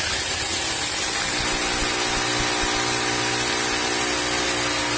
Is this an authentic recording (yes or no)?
yes